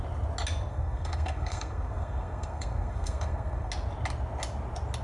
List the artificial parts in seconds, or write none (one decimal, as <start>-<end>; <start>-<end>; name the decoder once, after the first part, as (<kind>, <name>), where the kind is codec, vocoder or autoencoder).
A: 0.7-3.7 (codec, SNAC)